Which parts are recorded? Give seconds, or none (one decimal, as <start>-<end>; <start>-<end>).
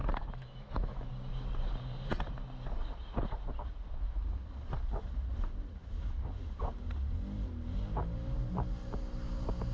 1.1-9.7